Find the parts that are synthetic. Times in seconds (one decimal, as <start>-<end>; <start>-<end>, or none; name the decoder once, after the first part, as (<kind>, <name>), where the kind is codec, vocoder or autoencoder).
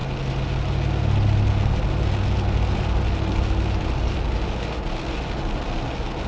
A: none